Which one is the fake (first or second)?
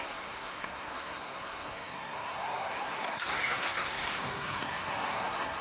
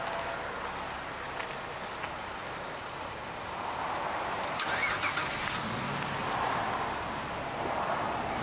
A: first